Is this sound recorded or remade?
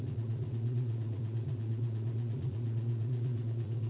remade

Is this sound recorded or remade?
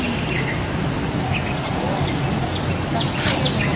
recorded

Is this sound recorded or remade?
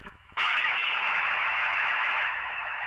remade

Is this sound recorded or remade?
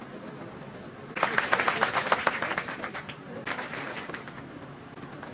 recorded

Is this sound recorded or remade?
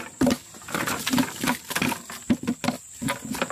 remade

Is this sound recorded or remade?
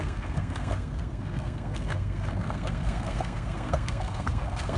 remade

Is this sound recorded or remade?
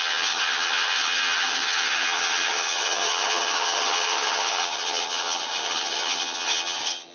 remade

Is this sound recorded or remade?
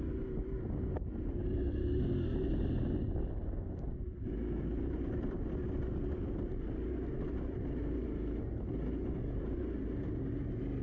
recorded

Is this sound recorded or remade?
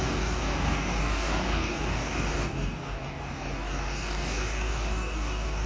remade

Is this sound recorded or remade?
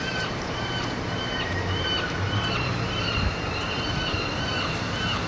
remade